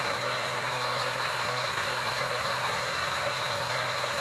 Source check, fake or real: fake